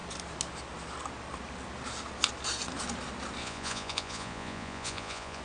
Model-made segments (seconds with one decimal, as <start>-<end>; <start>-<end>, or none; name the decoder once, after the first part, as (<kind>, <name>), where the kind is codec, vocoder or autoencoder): 3.4-5.4 (vocoder, Vocos)

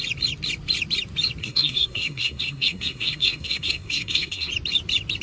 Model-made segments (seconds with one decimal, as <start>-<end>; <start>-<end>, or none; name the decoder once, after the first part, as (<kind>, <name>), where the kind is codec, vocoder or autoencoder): 1.4-4.5 (codec, SNAC)